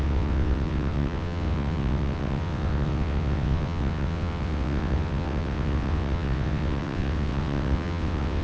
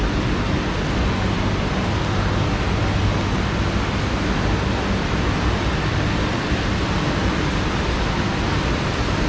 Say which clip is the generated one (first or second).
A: first